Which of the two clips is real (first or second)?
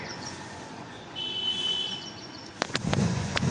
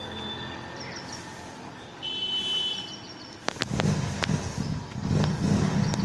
second